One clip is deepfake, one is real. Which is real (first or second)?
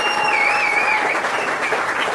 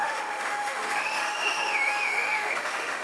first